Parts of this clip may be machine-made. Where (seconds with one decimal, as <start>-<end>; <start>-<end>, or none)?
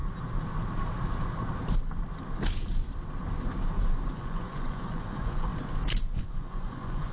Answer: 4.1-5.5; 6.2-7.1